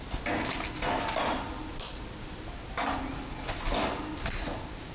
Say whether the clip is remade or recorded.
recorded